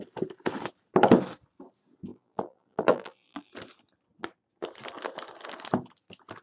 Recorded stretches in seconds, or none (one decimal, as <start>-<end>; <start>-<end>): 0.0-2.1; 3.5-6.4